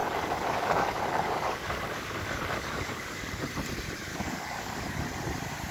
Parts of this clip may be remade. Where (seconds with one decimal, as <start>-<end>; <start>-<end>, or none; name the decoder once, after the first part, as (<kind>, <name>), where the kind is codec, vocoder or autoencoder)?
0.0-3.4 (codec, DAC); 4.1-5.0